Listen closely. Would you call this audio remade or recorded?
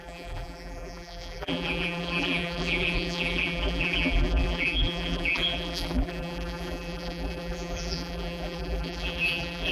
remade